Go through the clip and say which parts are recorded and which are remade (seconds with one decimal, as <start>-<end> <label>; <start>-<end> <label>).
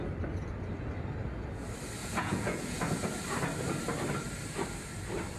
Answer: 0.0-2.0 recorded; 2.0-2.9 remade; 2.9-5.4 recorded